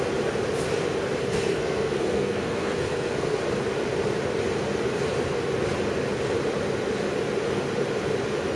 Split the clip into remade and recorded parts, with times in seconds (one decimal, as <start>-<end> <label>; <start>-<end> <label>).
0.0-1.2 recorded; 1.2-3.4 remade; 3.4-8.6 recorded

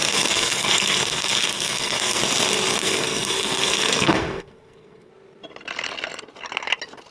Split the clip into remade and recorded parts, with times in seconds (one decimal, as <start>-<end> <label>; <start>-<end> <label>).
0.0-2.2 remade; 2.2-2.8 recorded; 2.8-5.1 remade; 5.1-7.1 recorded

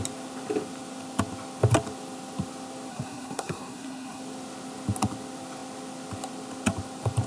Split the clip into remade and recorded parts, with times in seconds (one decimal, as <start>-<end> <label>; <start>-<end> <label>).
0.0-2.9 recorded; 2.9-4.2 remade; 4.2-7.3 recorded

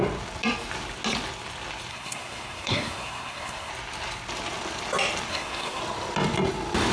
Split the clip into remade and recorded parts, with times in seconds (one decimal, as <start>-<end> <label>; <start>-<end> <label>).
0.0-1.9 recorded; 1.9-3.7 remade; 3.7-5.3 recorded; 5.3-5.8 remade; 5.8-6.9 recorded